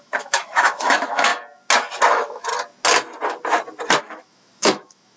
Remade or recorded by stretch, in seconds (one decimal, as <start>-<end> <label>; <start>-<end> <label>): 0.0-1.3 remade; 1.3-2.1 recorded; 2.1-2.5 remade; 2.5-4.0 recorded; 4.0-5.2 remade